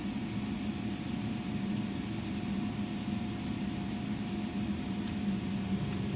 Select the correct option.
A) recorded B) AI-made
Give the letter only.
A